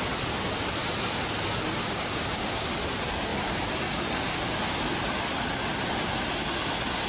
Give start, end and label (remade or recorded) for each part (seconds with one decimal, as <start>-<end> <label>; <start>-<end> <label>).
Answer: 0.0-1.8 recorded; 1.8-2.7 remade; 2.7-7.1 recorded